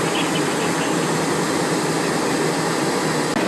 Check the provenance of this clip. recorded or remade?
recorded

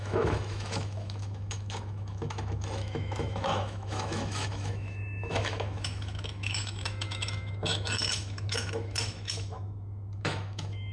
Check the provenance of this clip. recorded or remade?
remade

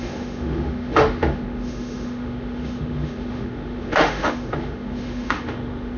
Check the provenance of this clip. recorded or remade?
remade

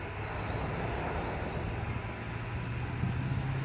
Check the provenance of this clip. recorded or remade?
recorded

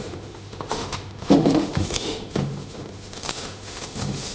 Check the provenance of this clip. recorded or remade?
remade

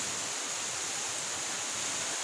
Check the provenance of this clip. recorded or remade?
recorded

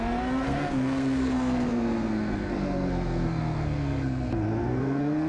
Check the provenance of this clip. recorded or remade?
remade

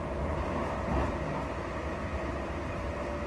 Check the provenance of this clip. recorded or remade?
recorded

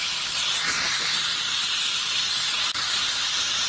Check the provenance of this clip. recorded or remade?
recorded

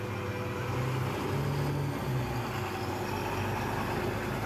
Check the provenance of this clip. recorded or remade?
recorded